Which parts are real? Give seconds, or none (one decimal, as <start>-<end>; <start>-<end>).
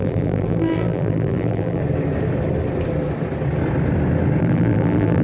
1.8-4.4